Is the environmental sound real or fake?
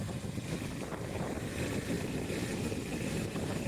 real